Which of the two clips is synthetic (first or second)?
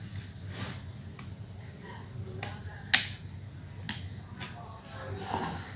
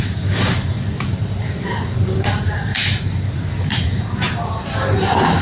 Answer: second